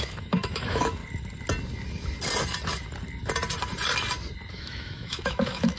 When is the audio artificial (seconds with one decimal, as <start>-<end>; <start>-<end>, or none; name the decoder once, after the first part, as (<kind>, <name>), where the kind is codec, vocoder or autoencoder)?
0.0-1.0 (autoencoder, DAC-VAE); 4.5-5.8